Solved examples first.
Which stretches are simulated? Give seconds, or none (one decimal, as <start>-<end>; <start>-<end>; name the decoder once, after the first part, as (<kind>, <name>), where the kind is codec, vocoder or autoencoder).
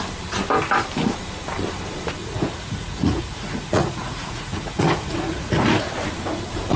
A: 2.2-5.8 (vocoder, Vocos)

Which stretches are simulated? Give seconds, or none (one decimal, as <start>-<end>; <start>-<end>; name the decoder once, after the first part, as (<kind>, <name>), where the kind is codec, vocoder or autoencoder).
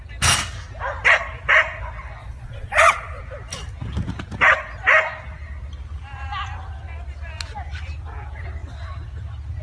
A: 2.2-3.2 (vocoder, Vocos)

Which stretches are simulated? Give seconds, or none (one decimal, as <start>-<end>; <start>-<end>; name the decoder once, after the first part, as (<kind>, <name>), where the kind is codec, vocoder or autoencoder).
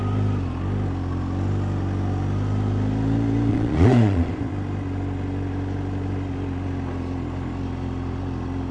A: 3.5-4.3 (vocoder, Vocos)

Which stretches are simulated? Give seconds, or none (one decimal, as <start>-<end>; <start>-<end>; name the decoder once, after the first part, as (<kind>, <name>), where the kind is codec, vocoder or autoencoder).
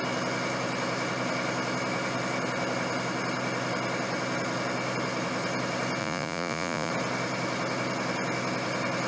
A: 6.0-6.9 (vocoder, Vocos)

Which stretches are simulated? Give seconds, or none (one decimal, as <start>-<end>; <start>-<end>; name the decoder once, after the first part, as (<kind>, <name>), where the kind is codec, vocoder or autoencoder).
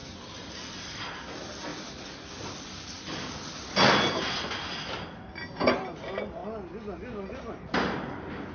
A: none